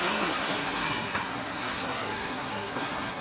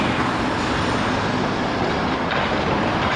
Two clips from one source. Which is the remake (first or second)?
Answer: first